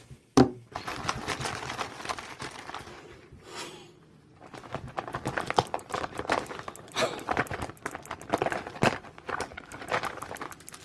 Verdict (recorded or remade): recorded